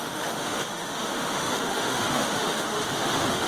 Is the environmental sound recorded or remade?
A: remade